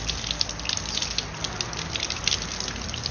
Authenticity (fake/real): real